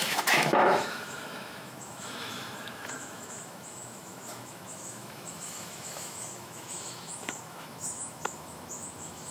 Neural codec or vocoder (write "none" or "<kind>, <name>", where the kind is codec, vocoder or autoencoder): autoencoder, DAC-VAE